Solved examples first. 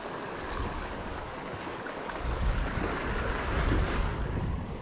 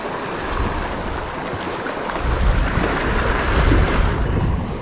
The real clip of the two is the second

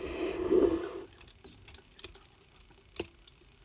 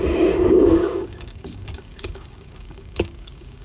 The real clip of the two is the first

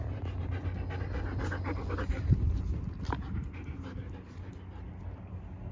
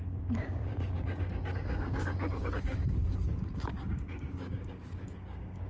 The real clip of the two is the first